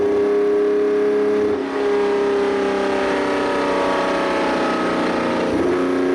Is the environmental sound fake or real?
real